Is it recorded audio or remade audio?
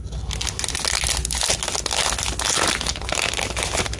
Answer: recorded